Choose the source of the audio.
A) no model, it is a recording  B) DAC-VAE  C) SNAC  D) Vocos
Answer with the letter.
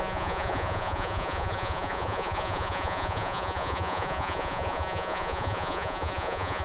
D